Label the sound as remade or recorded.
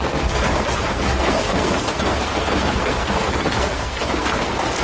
remade